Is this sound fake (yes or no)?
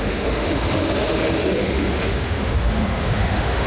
yes